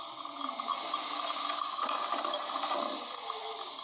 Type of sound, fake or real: real